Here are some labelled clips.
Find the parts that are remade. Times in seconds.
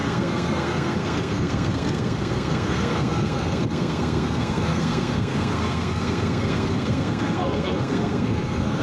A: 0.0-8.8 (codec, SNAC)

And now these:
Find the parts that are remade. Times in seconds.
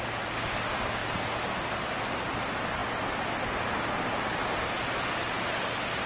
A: none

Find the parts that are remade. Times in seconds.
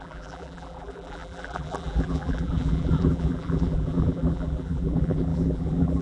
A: 0.0-6.0 (vocoder, BigVGAN v2)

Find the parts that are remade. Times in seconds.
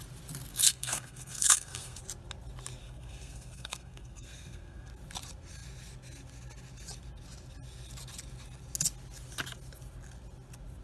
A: 0.5-2.0 (codec, SNAC); 2.8-4.9